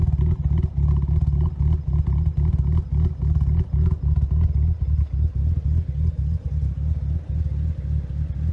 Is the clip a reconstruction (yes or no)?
no